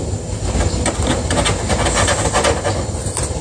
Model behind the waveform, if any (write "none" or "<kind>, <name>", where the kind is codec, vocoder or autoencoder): none